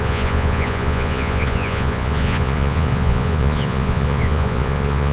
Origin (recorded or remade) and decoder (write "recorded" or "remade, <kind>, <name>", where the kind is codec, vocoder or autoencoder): remade, vocoder, Vocos